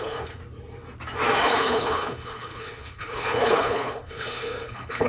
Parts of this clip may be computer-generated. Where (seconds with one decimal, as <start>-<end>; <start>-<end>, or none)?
0.0-0.4; 1.4-5.1